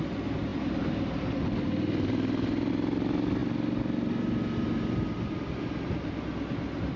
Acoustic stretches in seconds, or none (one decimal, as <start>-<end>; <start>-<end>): 0.0-7.0